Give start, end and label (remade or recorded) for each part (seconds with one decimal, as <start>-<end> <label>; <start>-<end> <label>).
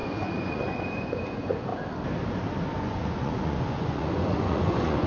0.0-1.7 remade; 1.7-2.8 recorded; 2.8-5.1 remade